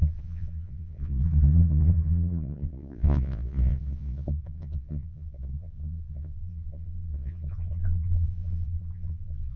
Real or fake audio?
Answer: fake